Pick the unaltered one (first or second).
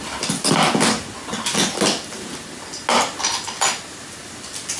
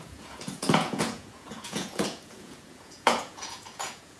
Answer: first